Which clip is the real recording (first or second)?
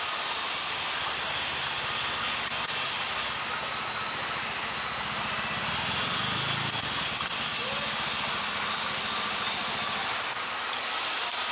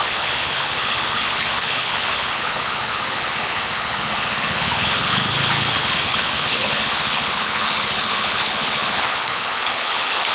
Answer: first